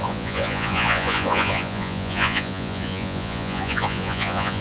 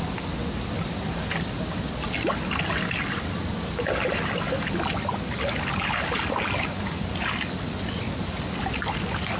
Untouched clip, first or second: second